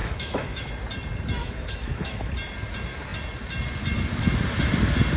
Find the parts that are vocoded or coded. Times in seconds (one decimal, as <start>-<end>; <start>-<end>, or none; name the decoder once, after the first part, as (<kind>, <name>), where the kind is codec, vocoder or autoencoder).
0.0-0.7 (autoencoder, DAC-VAE); 1.4-2.3